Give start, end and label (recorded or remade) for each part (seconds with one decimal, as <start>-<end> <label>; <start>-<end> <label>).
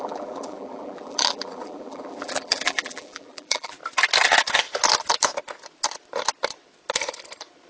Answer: 0.0-3.8 remade; 3.8-7.7 recorded